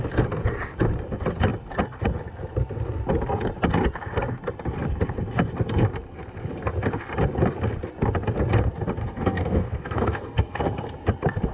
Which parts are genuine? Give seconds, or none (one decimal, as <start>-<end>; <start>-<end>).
0.0-9.0; 10.6-11.5